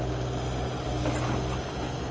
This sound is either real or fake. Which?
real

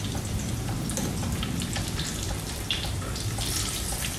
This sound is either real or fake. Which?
fake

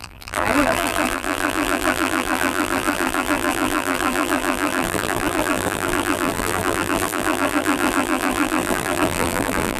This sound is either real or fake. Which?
fake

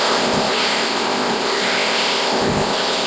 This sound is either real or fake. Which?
fake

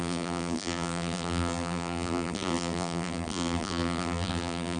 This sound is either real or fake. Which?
fake